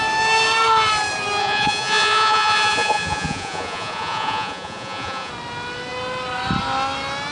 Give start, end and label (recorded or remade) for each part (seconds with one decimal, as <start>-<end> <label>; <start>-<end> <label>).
0.0-1.4 recorded; 1.4-5.3 remade; 5.3-7.3 recorded

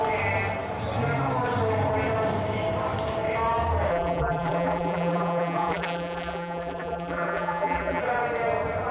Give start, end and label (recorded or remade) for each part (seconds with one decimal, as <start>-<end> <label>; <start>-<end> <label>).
0.0-3.9 recorded; 3.9-8.0 remade; 8.0-8.9 recorded

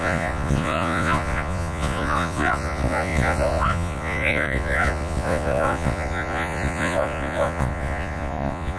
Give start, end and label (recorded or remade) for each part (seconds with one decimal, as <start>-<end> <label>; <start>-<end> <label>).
0.0-8.8 remade

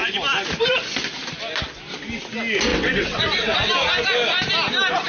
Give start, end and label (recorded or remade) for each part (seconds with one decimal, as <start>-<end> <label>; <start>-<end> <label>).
0.0-2.7 recorded; 2.7-3.7 remade; 3.7-5.1 recorded

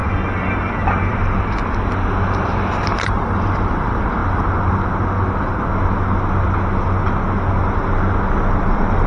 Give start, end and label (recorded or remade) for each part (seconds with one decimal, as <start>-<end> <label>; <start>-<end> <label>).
0.0-1.1 recorded; 1.1-1.6 remade; 1.6-3.0 recorded; 3.0-4.2 remade; 4.2-8.5 recorded; 8.5-9.1 remade

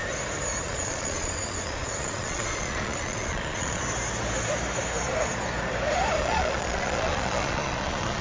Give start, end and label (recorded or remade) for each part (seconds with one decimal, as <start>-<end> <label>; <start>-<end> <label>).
0.0-0.6 recorded; 0.6-3.8 remade; 3.8-6.2 recorded; 6.2-8.2 remade